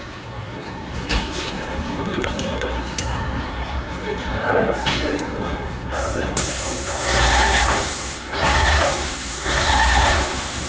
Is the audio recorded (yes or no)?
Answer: no